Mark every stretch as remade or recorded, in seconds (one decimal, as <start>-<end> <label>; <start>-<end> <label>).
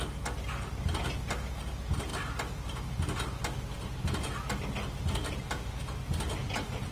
0.0-6.9 recorded